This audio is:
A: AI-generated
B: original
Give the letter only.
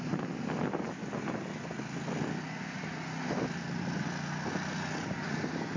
B